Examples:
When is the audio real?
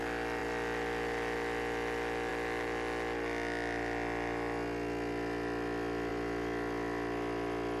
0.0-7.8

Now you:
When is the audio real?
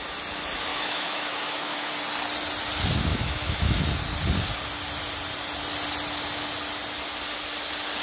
0.0-0.7; 1.9-3.1; 3.8-8.0